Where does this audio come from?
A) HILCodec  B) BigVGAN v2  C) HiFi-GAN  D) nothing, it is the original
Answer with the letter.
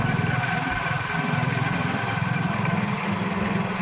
D